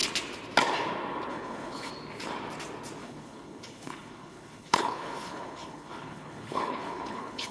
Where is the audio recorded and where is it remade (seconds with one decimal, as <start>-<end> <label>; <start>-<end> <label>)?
0.0-1.3 recorded; 1.3-1.9 remade; 1.9-3.0 recorded; 3.0-7.5 remade